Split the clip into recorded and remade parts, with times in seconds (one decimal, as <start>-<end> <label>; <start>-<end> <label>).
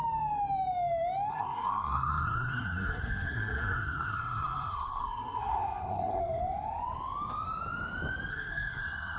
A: 0.0-1.3 recorded; 1.3-6.2 remade; 6.2-8.3 recorded; 8.3-9.2 remade